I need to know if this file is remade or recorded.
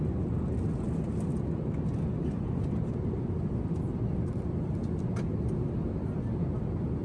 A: recorded